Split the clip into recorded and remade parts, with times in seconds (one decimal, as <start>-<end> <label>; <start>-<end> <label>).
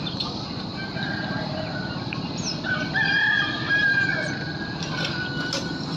0.0-6.0 remade